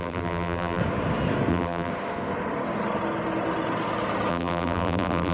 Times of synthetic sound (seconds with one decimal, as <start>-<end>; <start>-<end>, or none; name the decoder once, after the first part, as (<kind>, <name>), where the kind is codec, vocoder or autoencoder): 0.0-0.8 (vocoder, BigVGAN v2); 1.5-1.9; 4.3-5.3